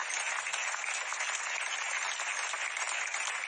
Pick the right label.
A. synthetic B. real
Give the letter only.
B